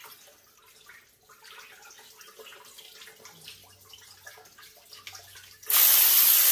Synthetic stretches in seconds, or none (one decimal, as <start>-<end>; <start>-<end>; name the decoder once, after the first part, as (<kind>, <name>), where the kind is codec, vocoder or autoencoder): none

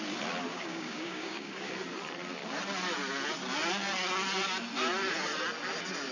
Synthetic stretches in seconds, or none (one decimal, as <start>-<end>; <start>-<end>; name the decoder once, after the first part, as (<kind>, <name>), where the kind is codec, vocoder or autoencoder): 0.5-1.7 (codec, DAC)

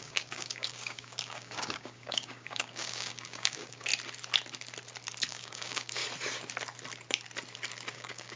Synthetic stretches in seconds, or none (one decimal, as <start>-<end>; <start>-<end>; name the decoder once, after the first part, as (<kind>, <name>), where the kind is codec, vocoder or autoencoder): 0.0-3.9 (codec, DAC); 5.3-6.0; 7.9-8.4

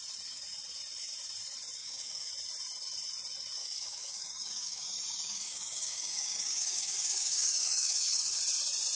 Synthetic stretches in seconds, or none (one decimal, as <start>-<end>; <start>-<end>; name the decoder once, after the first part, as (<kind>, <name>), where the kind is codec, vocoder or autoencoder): 1.8-2.3 (codec, DAC); 3.6-8.4

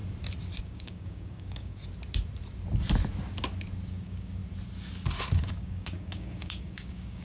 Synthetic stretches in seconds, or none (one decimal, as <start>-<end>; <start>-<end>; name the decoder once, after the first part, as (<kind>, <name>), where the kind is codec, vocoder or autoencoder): 0.6-1.8 (codec, DAC); 3.9-4.4; 5.4-7.2

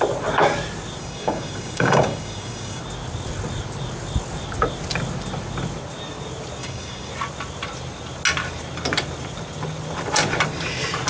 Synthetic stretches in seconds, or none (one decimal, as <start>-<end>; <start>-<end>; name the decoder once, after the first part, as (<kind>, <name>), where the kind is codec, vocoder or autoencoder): 1.0-2.8 (codec, DAC); 6.6-7.1